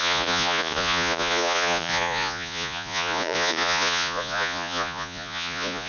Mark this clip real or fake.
fake